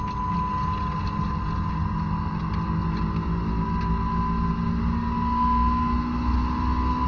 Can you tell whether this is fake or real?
real